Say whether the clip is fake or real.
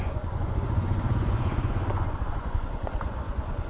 fake